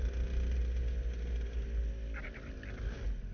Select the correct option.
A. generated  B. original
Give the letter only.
B